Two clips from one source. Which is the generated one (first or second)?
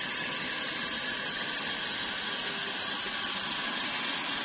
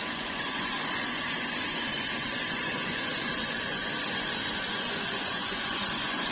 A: second